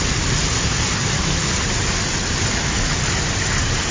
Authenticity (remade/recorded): recorded